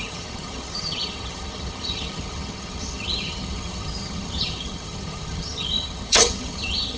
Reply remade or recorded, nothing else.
remade